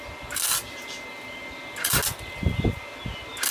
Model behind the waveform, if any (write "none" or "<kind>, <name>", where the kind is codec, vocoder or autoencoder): none